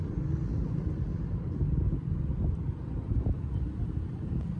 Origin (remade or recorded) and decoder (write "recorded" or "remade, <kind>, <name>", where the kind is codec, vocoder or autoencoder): recorded